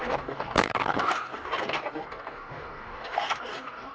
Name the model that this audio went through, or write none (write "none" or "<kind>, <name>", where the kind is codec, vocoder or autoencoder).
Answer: codec, DAC